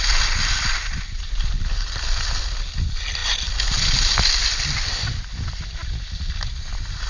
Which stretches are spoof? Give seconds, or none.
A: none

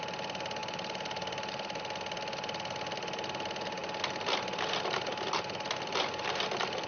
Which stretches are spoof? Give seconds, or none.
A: 0.6-1.8

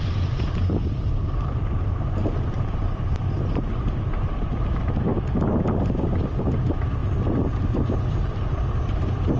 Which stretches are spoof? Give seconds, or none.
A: 0.0-5.1; 6.4-7.0; 7.5-9.4